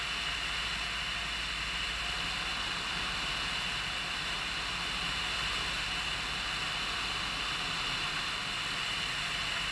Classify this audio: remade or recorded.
recorded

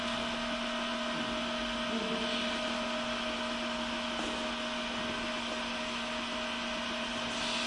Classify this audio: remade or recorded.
recorded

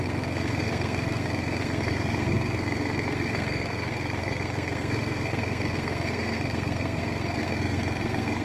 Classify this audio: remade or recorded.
remade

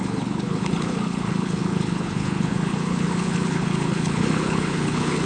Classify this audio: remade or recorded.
remade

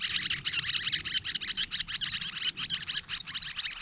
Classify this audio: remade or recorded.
recorded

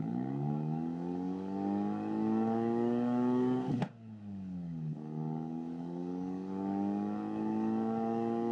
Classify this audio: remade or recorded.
remade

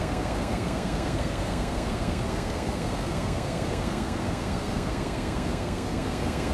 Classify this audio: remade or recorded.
remade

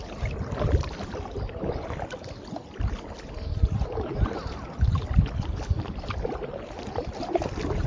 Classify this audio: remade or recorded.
recorded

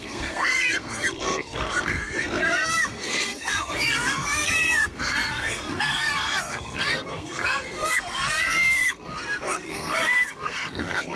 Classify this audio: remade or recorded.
remade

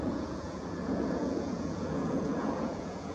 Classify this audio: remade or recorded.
remade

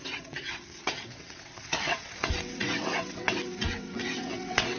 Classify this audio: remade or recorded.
remade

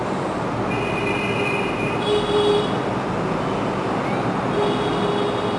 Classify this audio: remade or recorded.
recorded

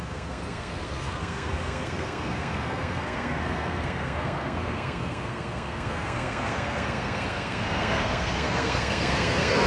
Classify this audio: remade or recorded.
remade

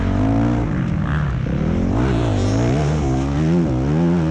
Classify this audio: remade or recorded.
recorded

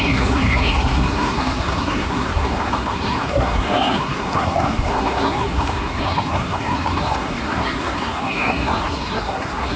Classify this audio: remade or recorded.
remade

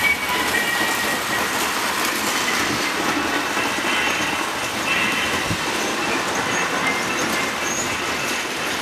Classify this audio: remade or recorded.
recorded